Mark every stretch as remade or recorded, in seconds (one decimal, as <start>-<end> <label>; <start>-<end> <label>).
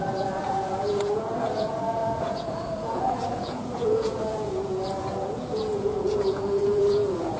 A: 0.0-7.4 remade